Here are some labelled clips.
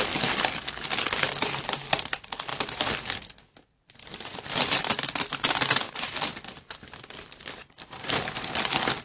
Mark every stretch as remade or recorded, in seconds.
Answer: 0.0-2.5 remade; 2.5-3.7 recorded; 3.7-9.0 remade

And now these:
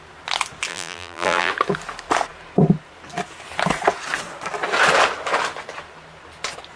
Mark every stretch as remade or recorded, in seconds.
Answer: 0.0-0.7 recorded; 0.7-1.5 remade; 1.5-6.8 recorded

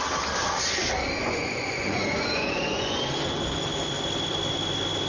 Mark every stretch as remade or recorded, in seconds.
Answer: 0.0-1.2 recorded; 1.2-3.0 remade; 3.0-5.1 recorded

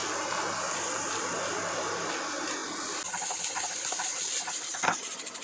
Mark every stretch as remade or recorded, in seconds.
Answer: 0.0-1.5 recorded; 1.5-2.6 remade; 2.6-3.8 recorded; 3.8-5.4 remade

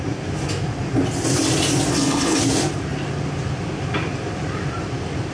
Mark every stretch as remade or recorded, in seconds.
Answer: 0.0-1.9 recorded; 1.9-2.4 remade; 2.4-5.3 recorded